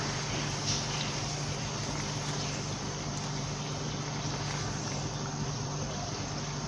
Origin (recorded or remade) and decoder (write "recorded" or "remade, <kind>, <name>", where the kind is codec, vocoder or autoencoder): remade, vocoder, BigVGAN v2